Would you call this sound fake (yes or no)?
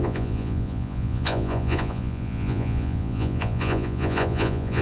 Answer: yes